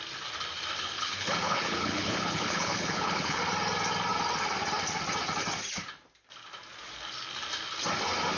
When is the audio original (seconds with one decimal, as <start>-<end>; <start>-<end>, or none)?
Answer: 0.0-0.8; 3.4-8.4